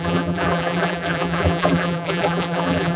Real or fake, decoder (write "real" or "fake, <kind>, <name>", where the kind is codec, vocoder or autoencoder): fake, vocoder, BigVGAN v2